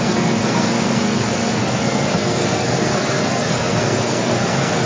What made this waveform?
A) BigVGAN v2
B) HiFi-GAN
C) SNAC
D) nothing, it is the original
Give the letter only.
C